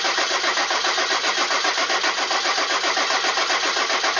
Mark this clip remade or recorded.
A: recorded